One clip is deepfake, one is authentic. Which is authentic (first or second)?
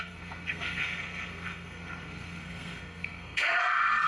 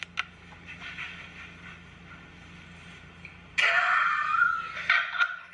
second